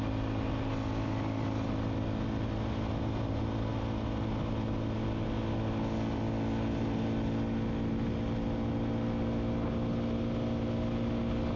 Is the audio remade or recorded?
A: recorded